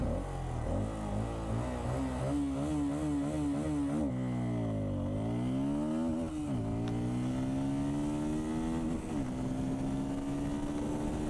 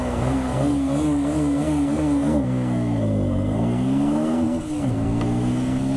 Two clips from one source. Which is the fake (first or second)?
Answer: second